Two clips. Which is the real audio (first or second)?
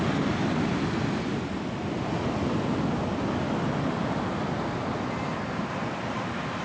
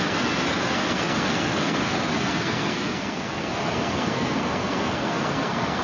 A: first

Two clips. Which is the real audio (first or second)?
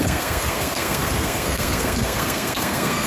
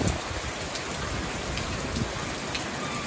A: second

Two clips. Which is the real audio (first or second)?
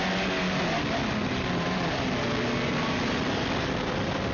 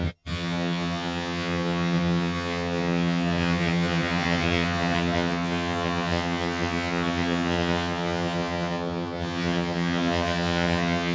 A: first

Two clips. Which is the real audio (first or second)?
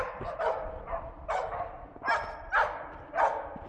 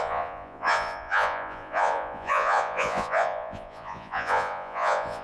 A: first